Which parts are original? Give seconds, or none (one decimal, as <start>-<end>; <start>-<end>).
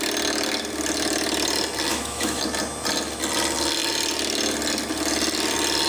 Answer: 0.0-1.9; 2.4-5.9